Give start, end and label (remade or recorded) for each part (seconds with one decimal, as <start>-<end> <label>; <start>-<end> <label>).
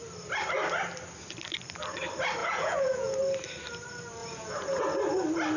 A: 0.0-2.4 recorded; 2.4-3.2 remade; 3.2-4.2 recorded; 4.2-4.8 remade; 4.8-5.6 recorded